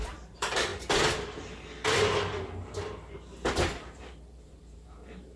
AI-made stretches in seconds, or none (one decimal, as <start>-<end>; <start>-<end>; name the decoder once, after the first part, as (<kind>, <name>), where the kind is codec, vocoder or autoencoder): 0.0-0.7 (vocoder, BigVGAN v2); 3.9-5.4

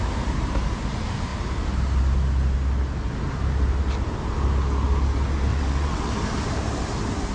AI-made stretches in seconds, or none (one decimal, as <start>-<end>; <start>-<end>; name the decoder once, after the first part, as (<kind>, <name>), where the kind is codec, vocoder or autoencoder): 5.5-6.1 (vocoder, WaveNeXt)

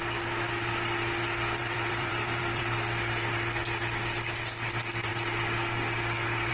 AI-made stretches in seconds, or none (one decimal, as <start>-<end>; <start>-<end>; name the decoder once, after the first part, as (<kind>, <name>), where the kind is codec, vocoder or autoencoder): 1.6-2.6 (vocoder, BigVGAN v2)